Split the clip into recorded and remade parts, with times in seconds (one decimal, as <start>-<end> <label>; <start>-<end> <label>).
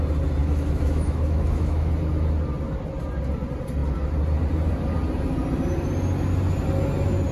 0.0-0.4 recorded; 0.4-1.9 remade; 1.9-7.3 recorded